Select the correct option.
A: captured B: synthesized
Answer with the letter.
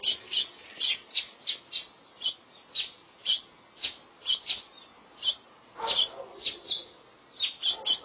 A